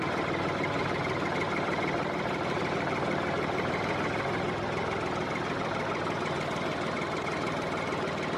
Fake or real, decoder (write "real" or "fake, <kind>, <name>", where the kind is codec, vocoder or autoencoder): fake, vocoder, BigVGAN v2